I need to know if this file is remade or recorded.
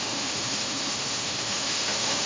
remade